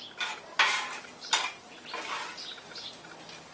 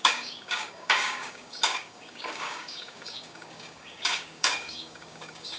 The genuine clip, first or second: first